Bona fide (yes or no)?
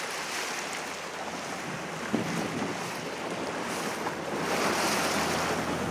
yes